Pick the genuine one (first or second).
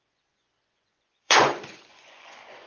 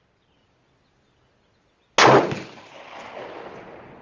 second